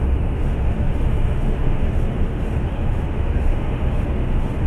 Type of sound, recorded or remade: remade